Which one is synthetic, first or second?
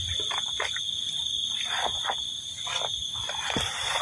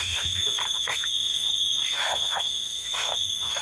second